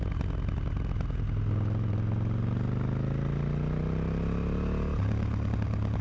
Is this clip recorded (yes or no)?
yes